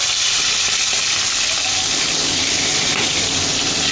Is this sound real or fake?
real